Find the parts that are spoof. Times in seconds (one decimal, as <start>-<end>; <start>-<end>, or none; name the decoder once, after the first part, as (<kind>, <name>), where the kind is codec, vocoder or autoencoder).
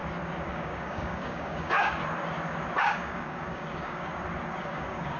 0.5-2.0 (codec, DAC); 2.8-4.1; 4.6-5.2